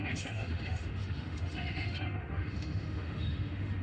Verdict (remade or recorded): remade